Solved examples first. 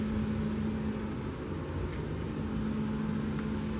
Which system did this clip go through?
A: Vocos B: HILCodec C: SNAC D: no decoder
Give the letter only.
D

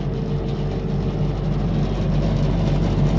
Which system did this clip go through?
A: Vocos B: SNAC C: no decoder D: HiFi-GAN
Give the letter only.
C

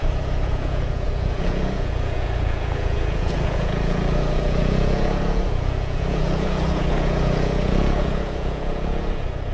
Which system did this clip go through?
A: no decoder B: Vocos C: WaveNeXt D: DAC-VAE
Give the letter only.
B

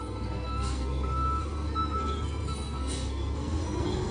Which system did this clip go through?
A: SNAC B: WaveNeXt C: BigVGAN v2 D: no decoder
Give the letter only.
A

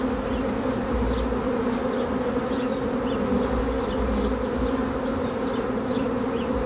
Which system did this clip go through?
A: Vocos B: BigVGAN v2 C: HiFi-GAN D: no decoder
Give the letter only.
D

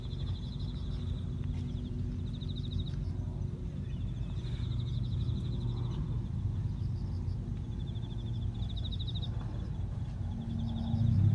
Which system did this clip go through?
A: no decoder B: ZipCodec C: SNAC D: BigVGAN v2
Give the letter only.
A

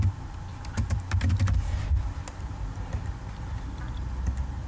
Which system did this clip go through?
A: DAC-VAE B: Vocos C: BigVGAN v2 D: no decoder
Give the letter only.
D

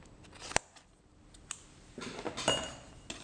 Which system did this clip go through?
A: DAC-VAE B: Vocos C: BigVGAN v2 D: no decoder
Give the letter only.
D